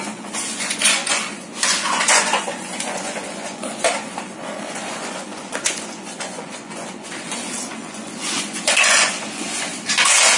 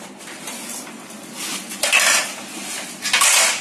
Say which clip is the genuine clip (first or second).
second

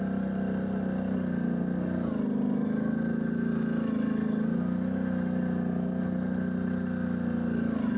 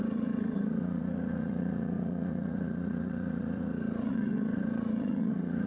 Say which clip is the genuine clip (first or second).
first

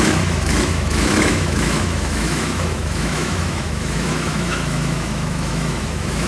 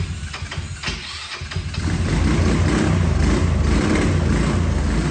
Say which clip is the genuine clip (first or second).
second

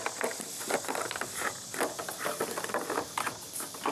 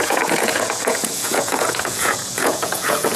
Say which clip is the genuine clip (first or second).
first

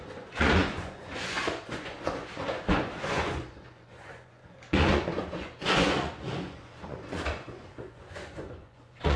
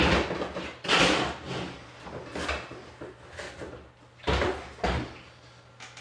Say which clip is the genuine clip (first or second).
second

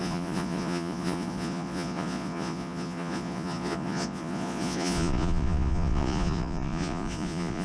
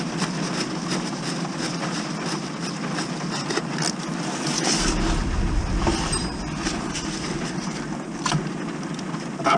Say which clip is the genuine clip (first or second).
second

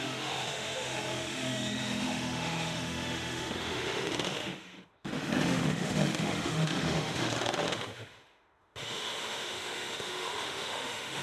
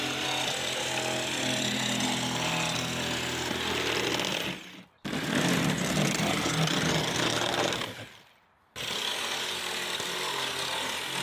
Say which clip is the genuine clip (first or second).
second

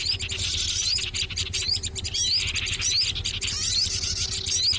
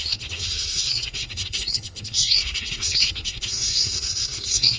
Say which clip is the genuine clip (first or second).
first